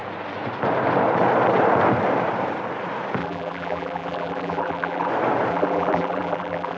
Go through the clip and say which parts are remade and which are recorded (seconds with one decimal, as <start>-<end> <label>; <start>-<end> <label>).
0.0-3.2 recorded; 3.2-5.1 remade; 5.1-5.5 recorded; 5.5-6.8 remade